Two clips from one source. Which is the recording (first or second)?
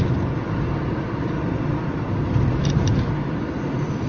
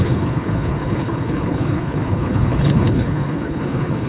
first